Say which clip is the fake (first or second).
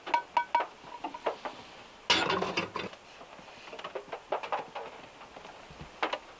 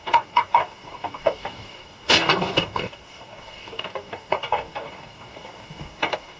second